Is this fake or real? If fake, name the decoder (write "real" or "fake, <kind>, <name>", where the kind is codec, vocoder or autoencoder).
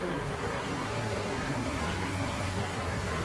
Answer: fake, codec, SNAC